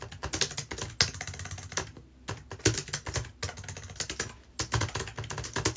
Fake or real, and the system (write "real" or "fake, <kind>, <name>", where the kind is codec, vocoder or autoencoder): real